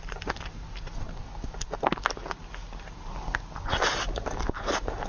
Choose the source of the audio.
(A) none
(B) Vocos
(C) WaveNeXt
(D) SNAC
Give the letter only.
A